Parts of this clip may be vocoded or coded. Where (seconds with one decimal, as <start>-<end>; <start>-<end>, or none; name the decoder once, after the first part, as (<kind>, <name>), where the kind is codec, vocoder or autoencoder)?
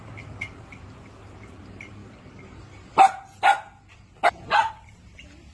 none